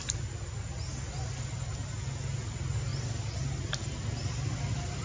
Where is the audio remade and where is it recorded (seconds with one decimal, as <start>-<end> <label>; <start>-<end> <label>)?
0.0-5.0 recorded